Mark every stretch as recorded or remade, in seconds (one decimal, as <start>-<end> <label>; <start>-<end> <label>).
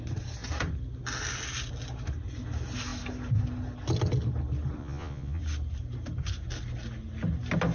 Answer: 0.0-4.8 recorded; 4.8-5.4 remade; 5.4-7.7 recorded